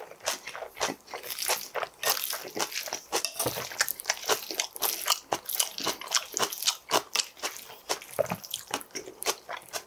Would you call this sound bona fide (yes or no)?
yes